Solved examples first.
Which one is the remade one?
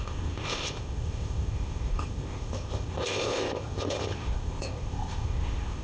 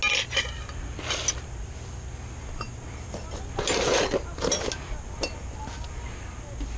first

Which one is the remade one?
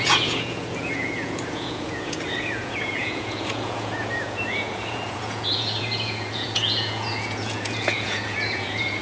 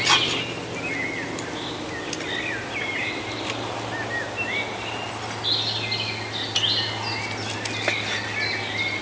first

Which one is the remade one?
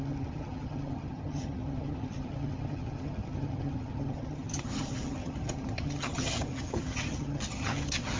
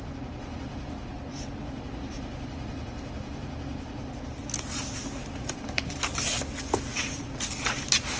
first